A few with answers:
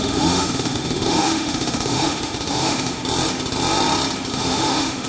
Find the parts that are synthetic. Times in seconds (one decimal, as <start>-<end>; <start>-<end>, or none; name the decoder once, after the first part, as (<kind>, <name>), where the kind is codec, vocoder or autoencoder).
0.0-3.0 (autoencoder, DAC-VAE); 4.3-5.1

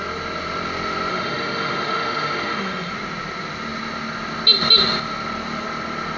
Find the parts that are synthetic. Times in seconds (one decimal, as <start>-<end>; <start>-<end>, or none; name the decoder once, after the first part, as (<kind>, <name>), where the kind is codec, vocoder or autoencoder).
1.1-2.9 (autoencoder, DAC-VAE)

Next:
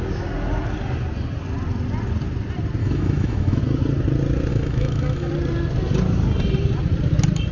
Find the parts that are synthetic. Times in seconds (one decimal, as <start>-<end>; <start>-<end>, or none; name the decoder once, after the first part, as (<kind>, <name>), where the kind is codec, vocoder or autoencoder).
2.8-3.6 (autoencoder, DAC-VAE); 4.5-5.3

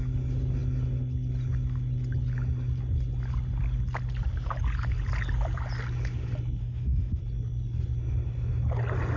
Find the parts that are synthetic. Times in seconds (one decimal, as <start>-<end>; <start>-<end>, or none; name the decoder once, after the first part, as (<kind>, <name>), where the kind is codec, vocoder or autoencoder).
6.6-7.2 (autoencoder, DAC-VAE)